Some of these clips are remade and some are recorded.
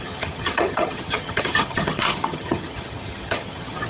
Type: remade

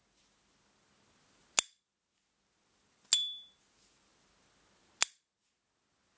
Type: recorded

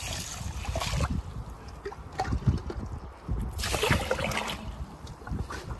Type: recorded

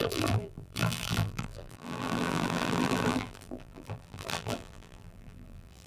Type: remade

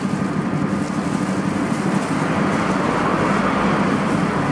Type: recorded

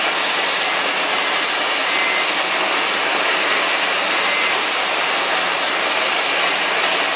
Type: recorded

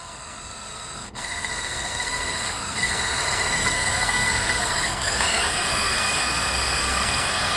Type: remade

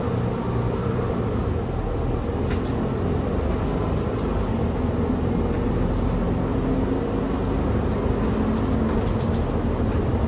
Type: recorded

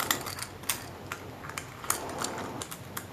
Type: recorded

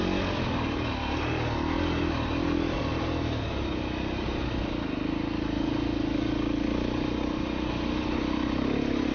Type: recorded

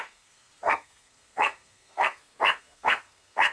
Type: remade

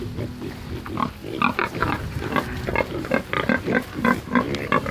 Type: recorded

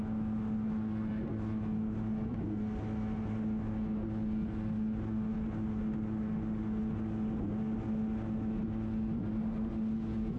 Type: recorded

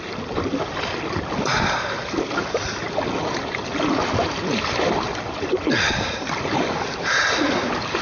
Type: recorded